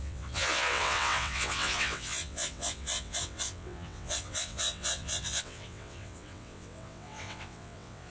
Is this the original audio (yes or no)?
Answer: no